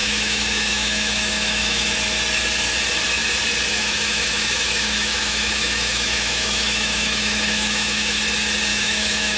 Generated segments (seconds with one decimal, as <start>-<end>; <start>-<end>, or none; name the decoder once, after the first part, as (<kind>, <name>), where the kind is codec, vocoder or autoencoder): 0.0-1.9 (autoencoder, DAC-VAE); 3.7-8.2; 8.7-9.4